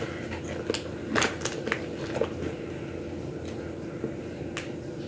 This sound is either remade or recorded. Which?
recorded